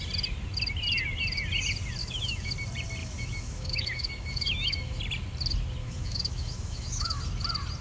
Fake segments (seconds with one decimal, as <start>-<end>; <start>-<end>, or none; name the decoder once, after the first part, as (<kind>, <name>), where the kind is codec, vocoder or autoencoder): 2.0-2.5 (autoencoder, DAC-VAE); 3.0-5.0; 5.8-7.2